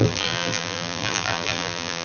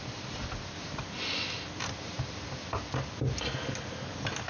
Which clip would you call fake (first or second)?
first